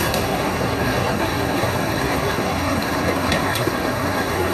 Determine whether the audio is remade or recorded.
remade